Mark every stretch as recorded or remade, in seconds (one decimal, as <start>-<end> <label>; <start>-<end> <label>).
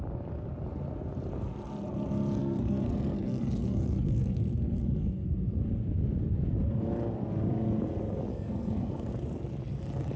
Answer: 0.0-2.4 recorded; 2.4-5.6 remade; 5.6-8.3 recorded; 8.3-9.1 remade; 9.1-10.2 recorded